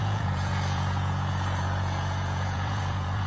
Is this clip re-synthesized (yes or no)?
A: yes